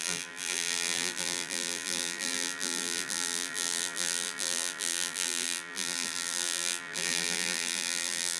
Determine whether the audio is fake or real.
fake